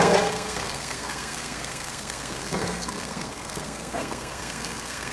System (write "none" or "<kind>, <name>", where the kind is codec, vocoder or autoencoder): codec, SNAC